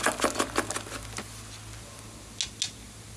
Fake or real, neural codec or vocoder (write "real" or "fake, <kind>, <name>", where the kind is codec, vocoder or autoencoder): real